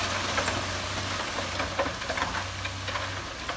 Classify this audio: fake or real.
real